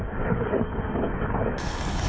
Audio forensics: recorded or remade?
remade